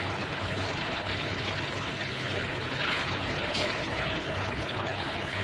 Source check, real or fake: fake